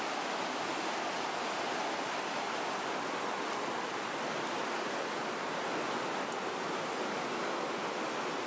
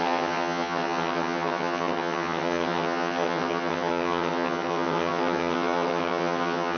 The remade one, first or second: second